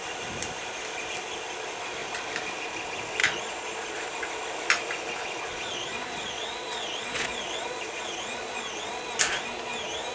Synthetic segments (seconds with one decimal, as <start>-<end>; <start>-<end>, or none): 3.2-4.0; 5.5-8.9